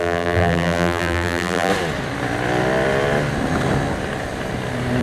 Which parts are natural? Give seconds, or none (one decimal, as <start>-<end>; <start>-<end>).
1.7-5.0